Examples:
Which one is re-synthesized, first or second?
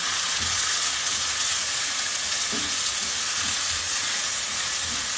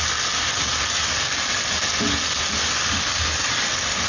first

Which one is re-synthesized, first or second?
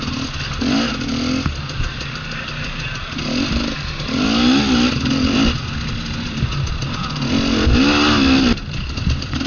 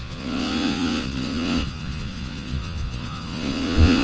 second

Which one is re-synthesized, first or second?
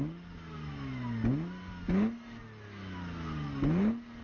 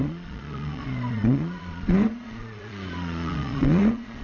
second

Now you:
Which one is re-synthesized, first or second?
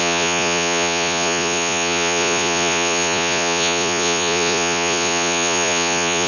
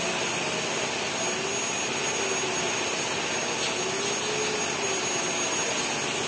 first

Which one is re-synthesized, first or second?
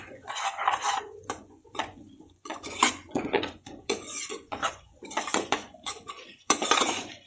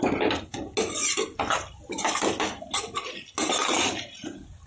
first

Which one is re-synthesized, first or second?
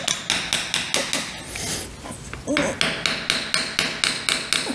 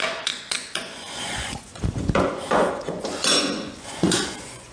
second